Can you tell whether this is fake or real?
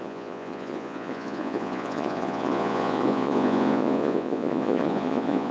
fake